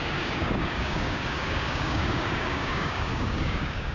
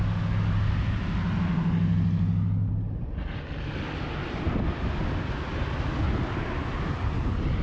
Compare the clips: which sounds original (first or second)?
second